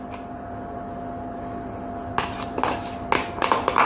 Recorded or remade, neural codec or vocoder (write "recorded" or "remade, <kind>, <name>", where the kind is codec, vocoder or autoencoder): recorded